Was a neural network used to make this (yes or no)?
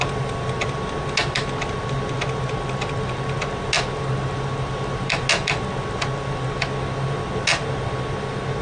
no